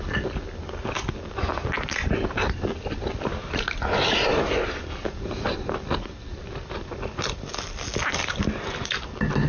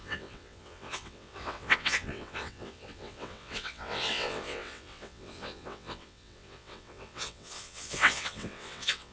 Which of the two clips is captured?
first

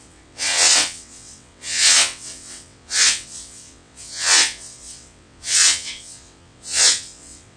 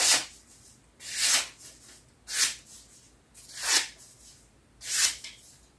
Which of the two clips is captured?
second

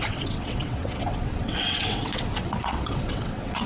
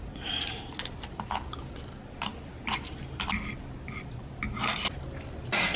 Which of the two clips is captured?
second